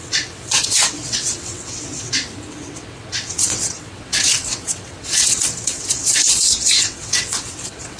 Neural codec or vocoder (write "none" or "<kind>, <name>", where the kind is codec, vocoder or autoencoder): vocoder, WaveNeXt